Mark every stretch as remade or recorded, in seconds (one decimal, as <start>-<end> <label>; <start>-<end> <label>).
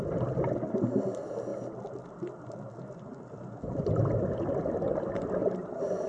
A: 0.0-5.4 recorded; 5.4-6.1 remade